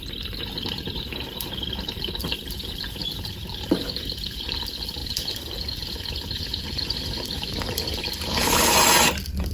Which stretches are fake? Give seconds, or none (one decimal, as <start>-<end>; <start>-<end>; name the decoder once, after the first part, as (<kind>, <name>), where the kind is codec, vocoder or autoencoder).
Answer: none